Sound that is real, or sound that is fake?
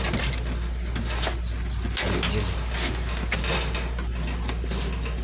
real